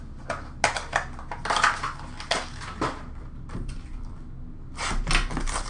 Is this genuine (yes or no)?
yes